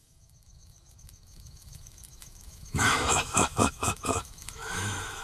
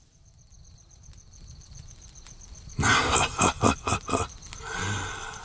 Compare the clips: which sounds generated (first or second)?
first